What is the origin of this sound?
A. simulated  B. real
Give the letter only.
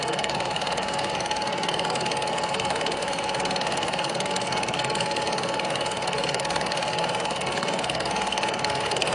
A